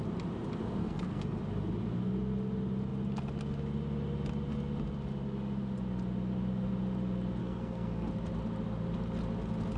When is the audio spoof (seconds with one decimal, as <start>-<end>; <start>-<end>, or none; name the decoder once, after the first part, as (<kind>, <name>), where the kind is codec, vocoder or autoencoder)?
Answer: 0.8-1.4 (codec, SNAC); 7.4-8.1